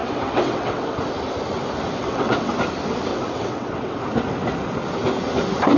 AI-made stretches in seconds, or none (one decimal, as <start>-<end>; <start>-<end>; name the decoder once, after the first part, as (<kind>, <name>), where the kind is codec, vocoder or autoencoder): 0.0-1.0 (vocoder, WaveNeXt); 2.0-2.5; 3.1-4.0